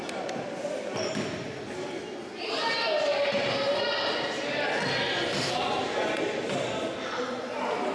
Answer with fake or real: real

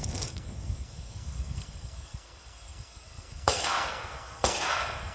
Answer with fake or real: fake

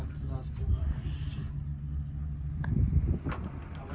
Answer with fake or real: real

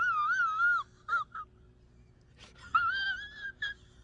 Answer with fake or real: real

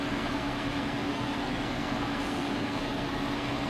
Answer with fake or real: fake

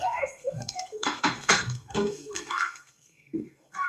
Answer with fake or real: fake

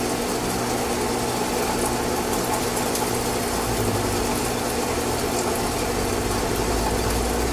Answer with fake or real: real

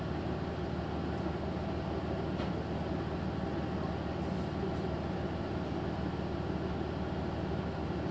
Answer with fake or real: real